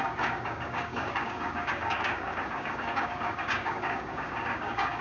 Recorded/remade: remade